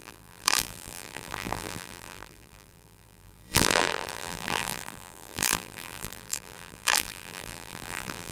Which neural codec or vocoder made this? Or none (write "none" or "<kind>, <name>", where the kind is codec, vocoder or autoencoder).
vocoder, BigVGAN v2